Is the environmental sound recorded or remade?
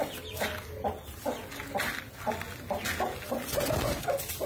recorded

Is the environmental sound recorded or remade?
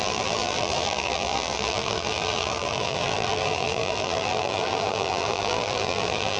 remade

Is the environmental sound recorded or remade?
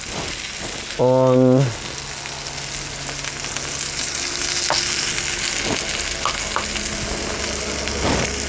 recorded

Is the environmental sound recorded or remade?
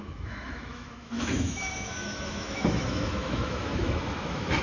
remade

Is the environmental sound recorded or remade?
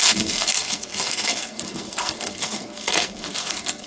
remade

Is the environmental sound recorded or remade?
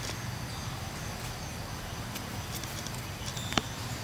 recorded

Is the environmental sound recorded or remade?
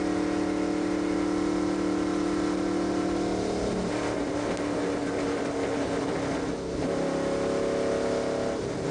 recorded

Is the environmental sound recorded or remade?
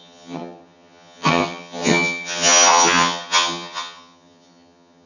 remade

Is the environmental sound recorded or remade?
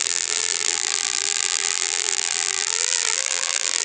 remade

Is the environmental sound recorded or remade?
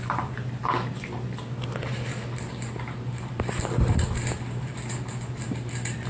remade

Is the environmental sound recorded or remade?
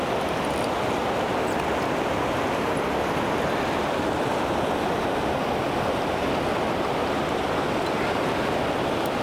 recorded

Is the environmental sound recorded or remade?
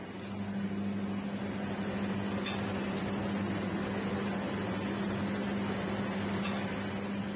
recorded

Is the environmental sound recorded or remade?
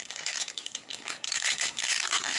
remade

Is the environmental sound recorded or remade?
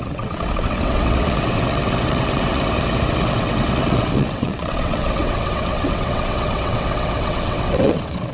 remade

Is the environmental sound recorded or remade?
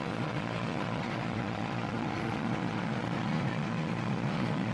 remade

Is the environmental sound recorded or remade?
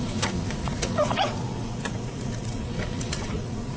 remade